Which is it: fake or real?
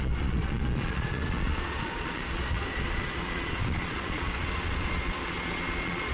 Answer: fake